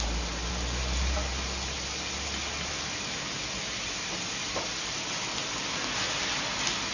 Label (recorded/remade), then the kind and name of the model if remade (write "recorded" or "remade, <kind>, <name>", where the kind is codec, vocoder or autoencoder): recorded